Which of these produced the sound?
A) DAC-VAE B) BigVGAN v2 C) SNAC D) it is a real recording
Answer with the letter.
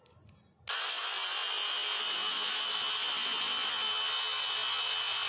D